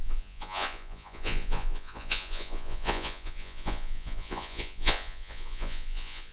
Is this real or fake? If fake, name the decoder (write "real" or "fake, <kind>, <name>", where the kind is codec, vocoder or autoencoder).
fake, vocoder, Vocos